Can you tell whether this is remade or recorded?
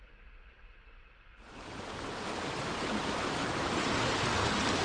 recorded